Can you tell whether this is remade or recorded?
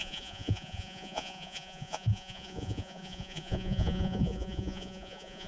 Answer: remade